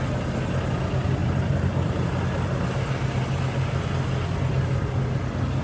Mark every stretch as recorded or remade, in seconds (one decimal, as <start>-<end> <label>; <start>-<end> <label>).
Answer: 0.0-1.2 recorded; 1.2-2.2 remade; 2.2-5.6 recorded